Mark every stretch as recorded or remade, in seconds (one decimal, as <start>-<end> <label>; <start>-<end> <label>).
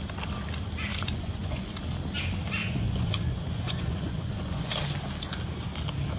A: 0.0-0.9 recorded; 0.9-1.7 remade; 1.7-2.6 recorded; 2.6-4.8 remade; 4.8-6.2 recorded